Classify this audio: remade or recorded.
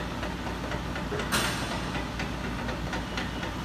recorded